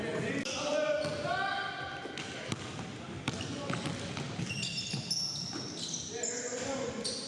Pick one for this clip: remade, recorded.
recorded